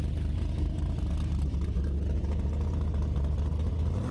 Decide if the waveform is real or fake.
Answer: real